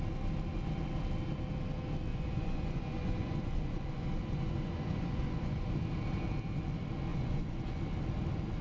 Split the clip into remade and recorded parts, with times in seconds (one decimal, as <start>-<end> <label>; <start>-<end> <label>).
0.0-2.1 recorded; 2.1-5.7 remade; 5.7-7.1 recorded; 7.1-7.8 remade; 7.8-8.6 recorded